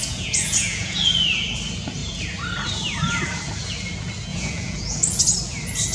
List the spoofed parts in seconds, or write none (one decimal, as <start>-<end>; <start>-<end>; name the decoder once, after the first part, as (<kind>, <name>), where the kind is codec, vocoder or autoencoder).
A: 0.0-1.0 (vocoder, Vocos); 4.3-5.2